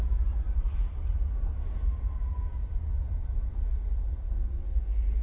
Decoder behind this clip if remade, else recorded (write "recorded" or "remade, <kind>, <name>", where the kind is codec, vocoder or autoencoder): recorded